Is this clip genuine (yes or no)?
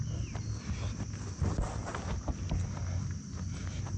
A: yes